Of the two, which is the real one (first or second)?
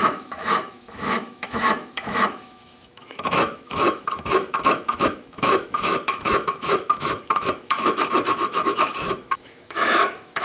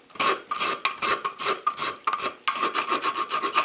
second